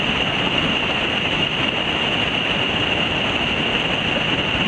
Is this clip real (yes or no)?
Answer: yes